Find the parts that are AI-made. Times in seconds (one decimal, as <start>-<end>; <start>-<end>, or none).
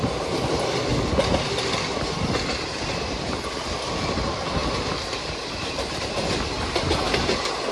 none